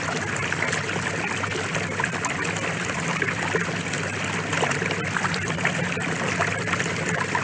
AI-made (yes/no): no